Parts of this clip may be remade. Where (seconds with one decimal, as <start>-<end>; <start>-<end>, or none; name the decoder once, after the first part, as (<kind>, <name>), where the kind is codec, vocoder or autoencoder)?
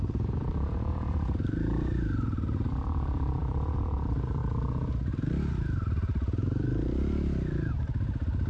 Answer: 0.0-4.4 (vocoder, BigVGAN v2); 5.5-8.5